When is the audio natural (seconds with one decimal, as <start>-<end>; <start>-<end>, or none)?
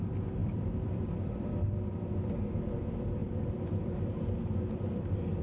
0.0-0.4; 1.5-3.2